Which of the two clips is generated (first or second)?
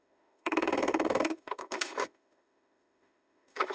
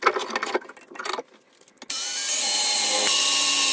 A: first